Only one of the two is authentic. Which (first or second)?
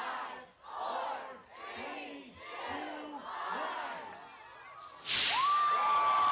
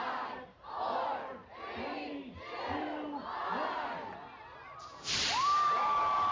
first